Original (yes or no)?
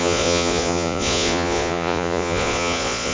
no